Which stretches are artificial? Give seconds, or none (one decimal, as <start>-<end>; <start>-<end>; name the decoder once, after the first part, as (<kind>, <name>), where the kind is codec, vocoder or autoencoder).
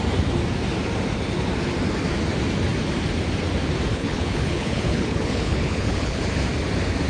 3.9-6.2 (codec, HILCodec)